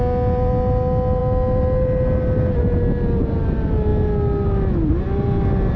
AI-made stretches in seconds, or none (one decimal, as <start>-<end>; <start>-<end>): none

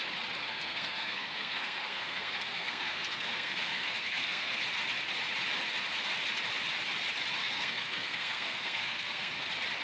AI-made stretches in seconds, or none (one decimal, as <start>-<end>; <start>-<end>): 0.4-4.6; 7.4-9.3

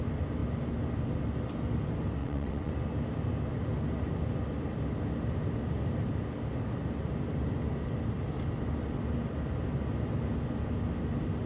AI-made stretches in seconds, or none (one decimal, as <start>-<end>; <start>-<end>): 2.2-2.7

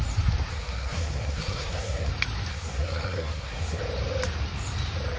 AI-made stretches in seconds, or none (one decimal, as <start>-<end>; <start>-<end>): 0.5-2.1; 2.5-3.8

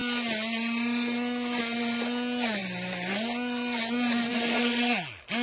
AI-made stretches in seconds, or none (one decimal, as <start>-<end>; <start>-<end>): none

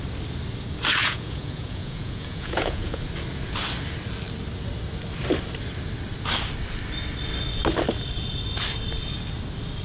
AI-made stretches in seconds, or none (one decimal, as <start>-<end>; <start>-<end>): 1.0-3.0